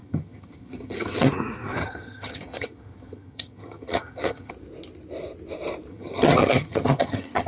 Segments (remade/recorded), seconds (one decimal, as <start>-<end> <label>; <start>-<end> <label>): 0.0-1.3 remade; 1.3-1.8 recorded; 1.8-4.5 remade; 4.5-5.9 recorded; 5.9-7.5 remade